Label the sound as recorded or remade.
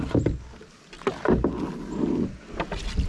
recorded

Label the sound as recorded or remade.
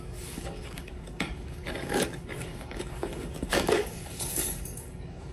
remade